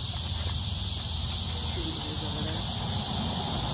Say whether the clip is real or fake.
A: real